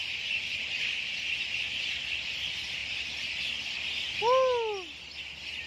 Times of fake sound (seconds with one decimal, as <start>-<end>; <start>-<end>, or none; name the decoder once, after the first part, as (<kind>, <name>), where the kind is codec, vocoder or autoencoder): none